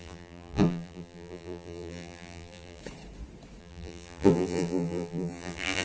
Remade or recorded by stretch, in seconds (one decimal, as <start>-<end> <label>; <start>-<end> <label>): 0.0-2.8 remade; 2.8-3.6 recorded; 3.6-5.8 remade